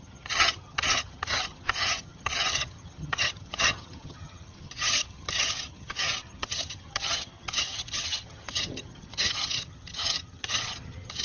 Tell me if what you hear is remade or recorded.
remade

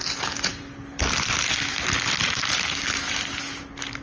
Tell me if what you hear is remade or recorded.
recorded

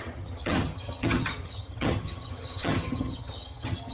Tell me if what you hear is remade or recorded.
remade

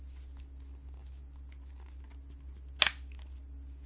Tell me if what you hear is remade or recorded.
recorded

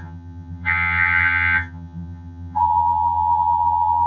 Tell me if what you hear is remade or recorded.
remade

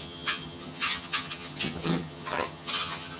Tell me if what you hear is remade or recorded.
remade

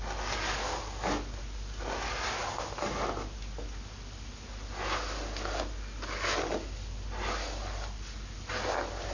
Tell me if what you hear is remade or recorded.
recorded